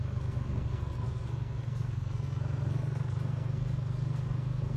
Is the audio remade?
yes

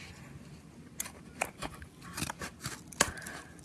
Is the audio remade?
no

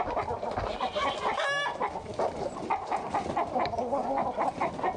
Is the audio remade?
no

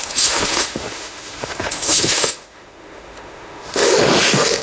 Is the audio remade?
yes